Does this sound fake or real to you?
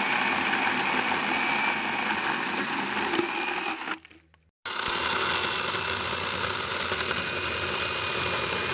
real